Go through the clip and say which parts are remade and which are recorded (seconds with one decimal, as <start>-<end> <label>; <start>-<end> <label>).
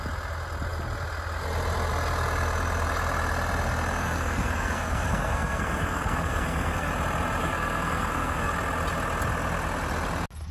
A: 0.0-4.0 recorded; 4.0-6.9 remade; 6.9-7.4 recorded; 7.4-8.5 remade; 8.5-10.5 recorded